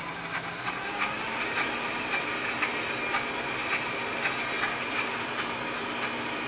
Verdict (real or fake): real